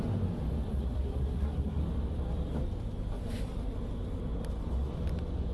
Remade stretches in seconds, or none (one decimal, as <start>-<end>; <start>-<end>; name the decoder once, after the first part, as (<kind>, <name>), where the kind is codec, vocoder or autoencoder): 0.7-1.8 (codec, SNAC)